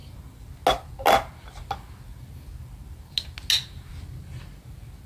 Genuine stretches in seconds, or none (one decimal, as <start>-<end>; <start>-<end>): 0.0-5.1